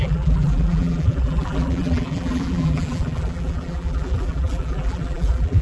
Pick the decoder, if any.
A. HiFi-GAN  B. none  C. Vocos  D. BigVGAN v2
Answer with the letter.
D